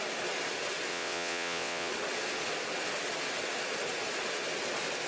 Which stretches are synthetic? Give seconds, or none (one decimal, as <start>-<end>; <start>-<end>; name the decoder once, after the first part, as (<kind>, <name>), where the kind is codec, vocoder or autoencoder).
0.9-1.9 (vocoder, WaveNeXt)